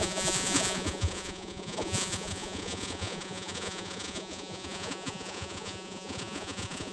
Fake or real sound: fake